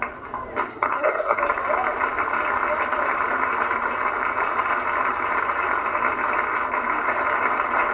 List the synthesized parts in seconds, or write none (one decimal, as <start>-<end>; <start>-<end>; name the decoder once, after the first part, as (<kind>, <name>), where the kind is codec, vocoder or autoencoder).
0.7-1.4 (codec, SNAC)